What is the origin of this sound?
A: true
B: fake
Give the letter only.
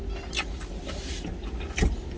A